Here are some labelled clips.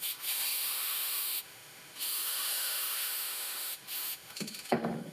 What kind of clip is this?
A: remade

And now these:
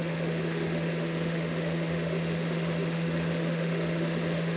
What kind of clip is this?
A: remade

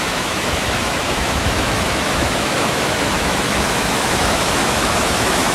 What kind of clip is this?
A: remade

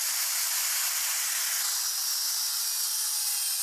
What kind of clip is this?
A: recorded